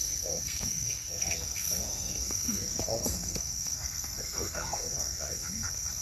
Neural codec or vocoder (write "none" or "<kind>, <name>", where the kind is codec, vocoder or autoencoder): codec, SNAC